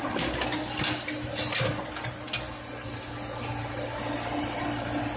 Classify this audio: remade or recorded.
recorded